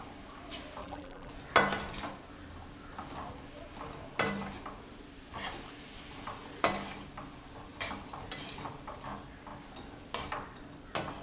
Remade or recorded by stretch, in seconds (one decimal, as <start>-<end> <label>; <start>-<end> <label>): 0.0-0.8 recorded; 0.8-1.3 remade; 1.3-11.2 recorded